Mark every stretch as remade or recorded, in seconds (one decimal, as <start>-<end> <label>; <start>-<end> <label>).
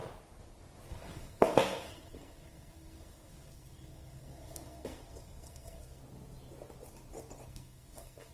0.0-0.9 recorded; 0.9-6.0 remade; 6.0-7.5 recorded; 7.5-8.3 remade